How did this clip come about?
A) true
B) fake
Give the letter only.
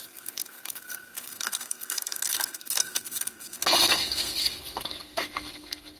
B